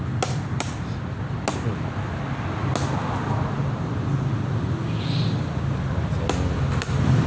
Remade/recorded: recorded